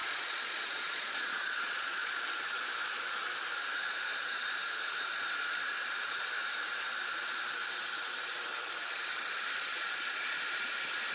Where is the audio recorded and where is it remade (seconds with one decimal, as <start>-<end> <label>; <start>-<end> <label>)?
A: 0.0-2.2 remade; 2.2-9.7 recorded; 9.7-10.4 remade; 10.4-11.1 recorded